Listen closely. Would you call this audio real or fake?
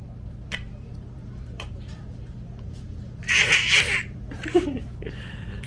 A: fake